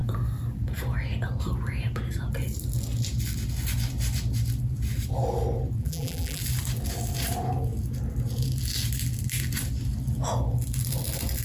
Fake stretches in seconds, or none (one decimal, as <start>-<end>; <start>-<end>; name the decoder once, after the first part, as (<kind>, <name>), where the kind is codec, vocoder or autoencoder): 5.8-6.4 (vocoder, BigVGAN v2)